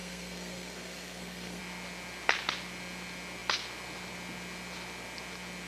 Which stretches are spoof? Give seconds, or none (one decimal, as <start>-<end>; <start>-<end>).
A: 0.0-1.6